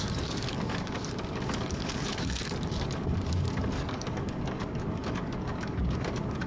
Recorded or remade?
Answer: remade